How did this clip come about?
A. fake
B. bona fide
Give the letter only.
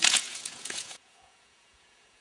A